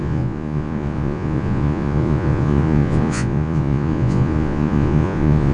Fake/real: fake